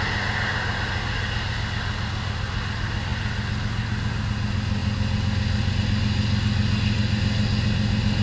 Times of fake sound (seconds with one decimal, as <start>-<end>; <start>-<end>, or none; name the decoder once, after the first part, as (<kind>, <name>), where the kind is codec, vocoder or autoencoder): none